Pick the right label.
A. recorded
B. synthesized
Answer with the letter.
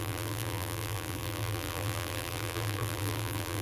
B